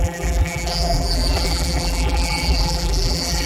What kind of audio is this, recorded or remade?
remade